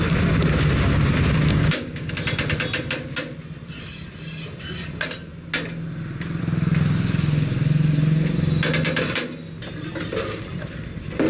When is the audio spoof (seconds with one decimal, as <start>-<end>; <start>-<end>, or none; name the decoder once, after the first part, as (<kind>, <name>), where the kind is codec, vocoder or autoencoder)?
1.5-2.1 (codec, DAC)